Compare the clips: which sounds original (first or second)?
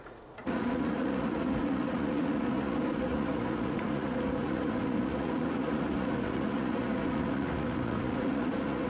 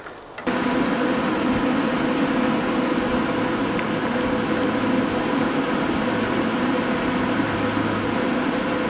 second